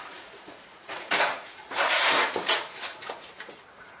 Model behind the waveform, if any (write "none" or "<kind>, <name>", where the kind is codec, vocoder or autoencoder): vocoder, Vocos